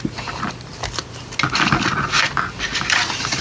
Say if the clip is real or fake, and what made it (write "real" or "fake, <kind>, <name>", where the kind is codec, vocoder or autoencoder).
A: real